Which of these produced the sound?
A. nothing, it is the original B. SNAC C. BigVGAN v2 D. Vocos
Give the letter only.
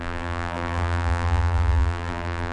C